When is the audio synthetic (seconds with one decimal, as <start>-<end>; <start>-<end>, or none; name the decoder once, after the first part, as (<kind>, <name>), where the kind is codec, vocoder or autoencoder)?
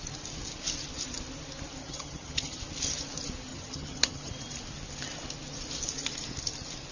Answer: 1.8-2.6 (vocoder, HiFi-GAN); 3.5-4.3